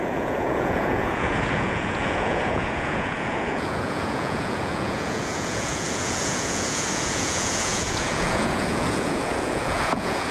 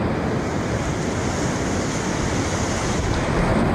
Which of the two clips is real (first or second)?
second